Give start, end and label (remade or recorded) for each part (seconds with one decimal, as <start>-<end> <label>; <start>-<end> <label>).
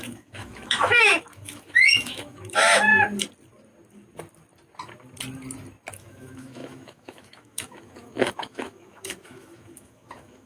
0.0-2.9 remade; 2.9-5.9 recorded; 5.9-10.5 remade